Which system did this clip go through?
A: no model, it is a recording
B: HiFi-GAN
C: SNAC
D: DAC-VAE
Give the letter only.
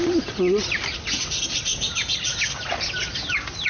A